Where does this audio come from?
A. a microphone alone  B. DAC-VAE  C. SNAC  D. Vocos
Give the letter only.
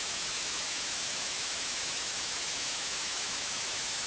B